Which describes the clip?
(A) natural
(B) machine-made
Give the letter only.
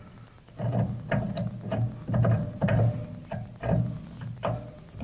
A